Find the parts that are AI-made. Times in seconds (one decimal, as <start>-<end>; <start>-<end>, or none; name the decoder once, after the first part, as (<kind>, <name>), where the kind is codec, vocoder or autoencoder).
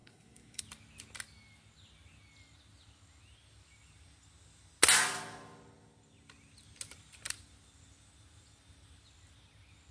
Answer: 0.0-0.6 (codec, SNAC)